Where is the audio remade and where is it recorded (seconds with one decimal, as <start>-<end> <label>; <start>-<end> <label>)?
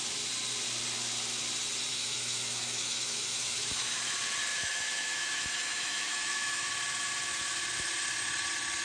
0.0-1.9 recorded; 1.9-4.0 remade; 4.0-4.5 recorded; 4.5-6.7 remade; 6.7-8.8 recorded